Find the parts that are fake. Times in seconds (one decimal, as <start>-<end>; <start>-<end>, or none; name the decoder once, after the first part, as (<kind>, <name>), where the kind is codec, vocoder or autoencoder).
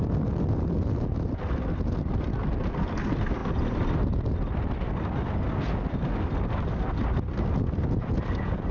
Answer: none